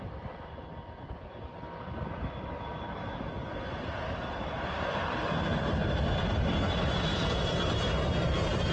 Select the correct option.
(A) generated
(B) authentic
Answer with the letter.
A